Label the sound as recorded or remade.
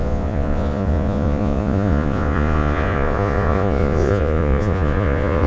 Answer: remade